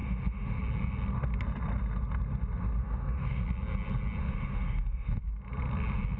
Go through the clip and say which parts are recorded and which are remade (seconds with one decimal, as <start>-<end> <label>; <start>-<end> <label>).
0.0-0.6 remade; 0.6-2.8 recorded; 2.8-3.4 remade; 3.4-4.2 recorded; 4.2-5.2 remade; 5.2-6.2 recorded